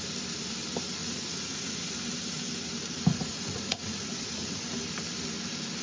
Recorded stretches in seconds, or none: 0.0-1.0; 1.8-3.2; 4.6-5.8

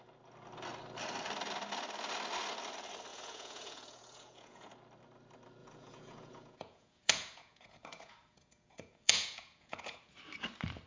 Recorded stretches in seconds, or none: 0.0-3.1; 4.7-5.6; 10.1-10.9